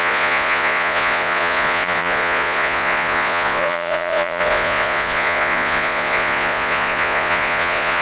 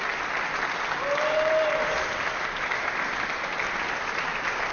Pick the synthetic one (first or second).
first